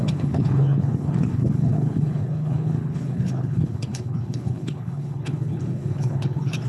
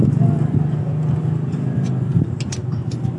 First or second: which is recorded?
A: second